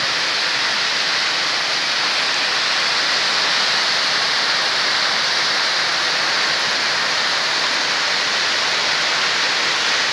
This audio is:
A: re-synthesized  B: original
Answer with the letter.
B